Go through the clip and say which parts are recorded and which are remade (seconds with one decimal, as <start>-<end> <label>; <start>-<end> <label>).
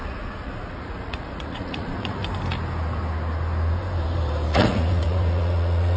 0.0-2.2 remade; 2.2-4.5 recorded; 4.5-6.0 remade